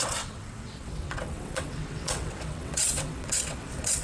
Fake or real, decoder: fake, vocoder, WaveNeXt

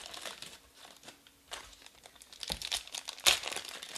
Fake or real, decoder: real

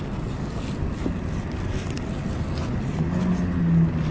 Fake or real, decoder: real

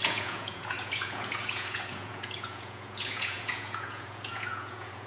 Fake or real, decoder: fake, vocoder, Vocos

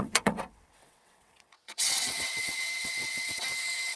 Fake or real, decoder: fake, vocoder, WaveNeXt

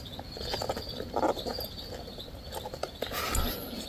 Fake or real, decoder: real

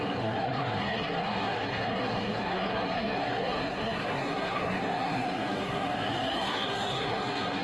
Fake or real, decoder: fake, codec, SNAC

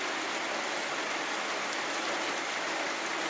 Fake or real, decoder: real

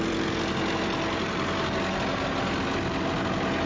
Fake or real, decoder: real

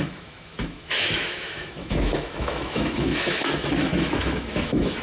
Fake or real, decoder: fake, autoencoder, DAC-VAE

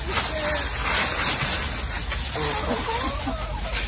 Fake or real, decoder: real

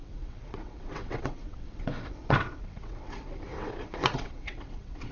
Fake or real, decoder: fake, vocoder, WaveNeXt